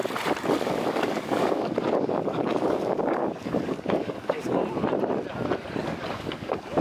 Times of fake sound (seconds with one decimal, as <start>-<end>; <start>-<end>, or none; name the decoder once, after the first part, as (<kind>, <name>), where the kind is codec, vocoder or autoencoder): 0.7-4.6 (codec, DAC); 5.8-6.8